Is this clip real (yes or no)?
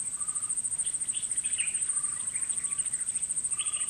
yes